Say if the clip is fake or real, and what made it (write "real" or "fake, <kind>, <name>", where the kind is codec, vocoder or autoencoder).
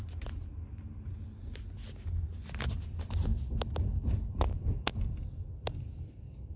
real